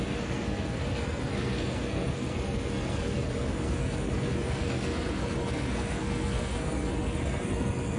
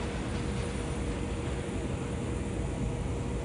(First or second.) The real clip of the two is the second